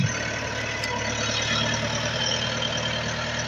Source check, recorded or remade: recorded